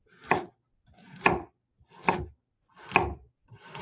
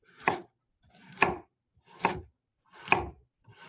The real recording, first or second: first